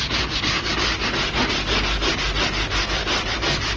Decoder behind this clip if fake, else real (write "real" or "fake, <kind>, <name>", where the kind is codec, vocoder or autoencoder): real